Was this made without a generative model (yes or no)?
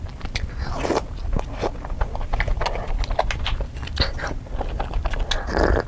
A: yes